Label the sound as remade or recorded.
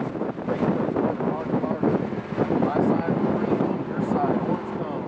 recorded